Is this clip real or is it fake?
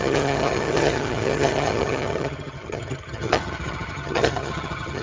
fake